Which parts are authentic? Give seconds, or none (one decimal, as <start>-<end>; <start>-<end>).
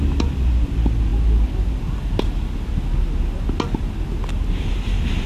0.0-5.3